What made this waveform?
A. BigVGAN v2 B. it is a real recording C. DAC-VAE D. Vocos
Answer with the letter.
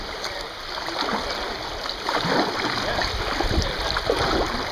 B